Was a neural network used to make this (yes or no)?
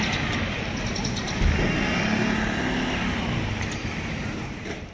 no